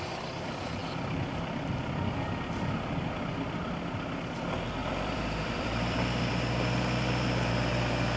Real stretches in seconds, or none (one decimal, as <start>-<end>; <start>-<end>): 0.0-4.8; 7.5-8.2